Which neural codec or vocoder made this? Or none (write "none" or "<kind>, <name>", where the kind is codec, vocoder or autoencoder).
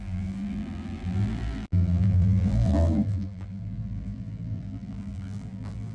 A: vocoder, BigVGAN v2